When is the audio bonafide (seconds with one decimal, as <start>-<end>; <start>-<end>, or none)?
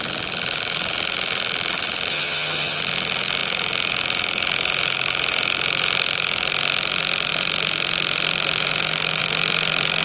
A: 0.0-2.1; 2.8-10.0